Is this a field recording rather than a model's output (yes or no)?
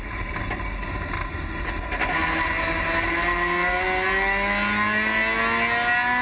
yes